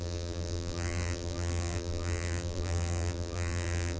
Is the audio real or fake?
fake